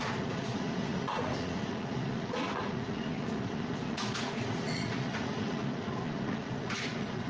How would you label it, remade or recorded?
remade